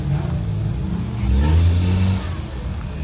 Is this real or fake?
real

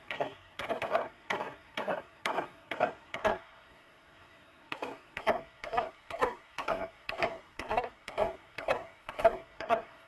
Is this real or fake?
fake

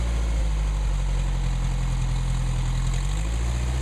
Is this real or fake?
real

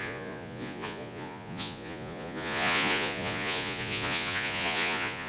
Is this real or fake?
fake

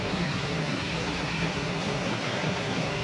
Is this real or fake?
fake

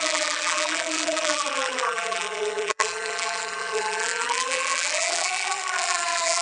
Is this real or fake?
fake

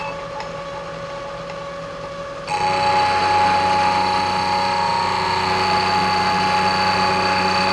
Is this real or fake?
real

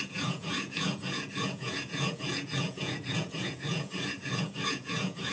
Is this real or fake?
fake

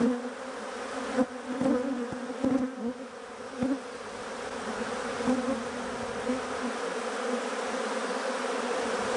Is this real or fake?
real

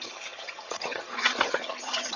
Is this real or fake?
fake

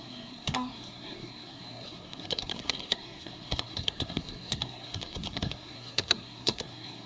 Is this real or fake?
fake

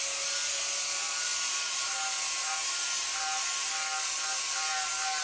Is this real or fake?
real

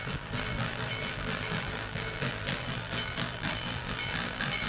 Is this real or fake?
fake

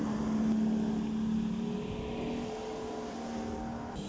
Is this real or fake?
real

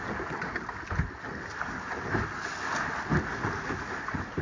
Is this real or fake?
real